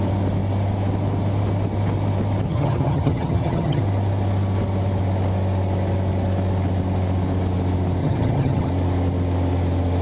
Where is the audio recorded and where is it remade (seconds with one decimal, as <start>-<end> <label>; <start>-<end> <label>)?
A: 0.0-2.5 recorded; 2.5-3.8 remade; 3.8-8.0 recorded; 8.0-8.7 remade; 8.7-10.0 recorded